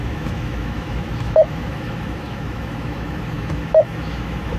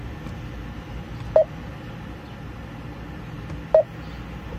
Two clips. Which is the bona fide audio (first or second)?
second